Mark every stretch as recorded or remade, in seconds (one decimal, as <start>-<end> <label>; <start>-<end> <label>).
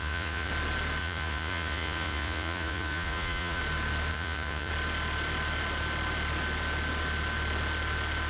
0.0-0.5 remade; 0.5-1.0 recorded; 1.0-3.6 remade; 3.6-4.1 recorded; 4.1-4.7 remade; 4.7-8.3 recorded